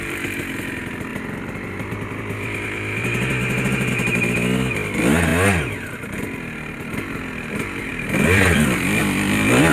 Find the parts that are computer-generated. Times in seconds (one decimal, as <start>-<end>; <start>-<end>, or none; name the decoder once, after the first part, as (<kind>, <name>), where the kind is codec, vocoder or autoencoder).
1.1-3.3 (vocoder, BigVGAN v2); 7.9-9.0